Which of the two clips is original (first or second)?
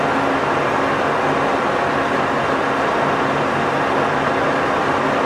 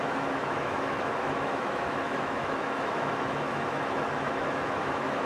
first